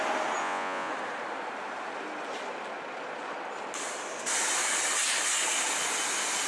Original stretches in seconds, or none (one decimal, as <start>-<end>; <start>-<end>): 0.0-0.4; 0.9-6.5